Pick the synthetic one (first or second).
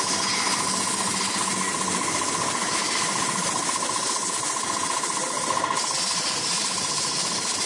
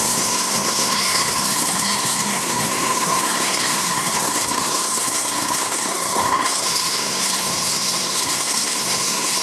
second